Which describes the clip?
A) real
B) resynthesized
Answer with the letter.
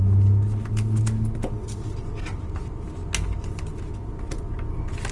A